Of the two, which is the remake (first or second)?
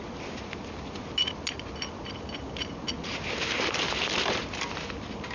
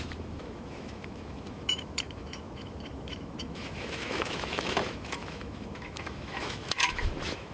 second